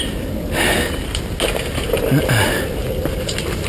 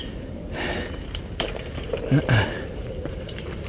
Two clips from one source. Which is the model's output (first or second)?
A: second